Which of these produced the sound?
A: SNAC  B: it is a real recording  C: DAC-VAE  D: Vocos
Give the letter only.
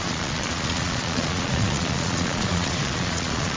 D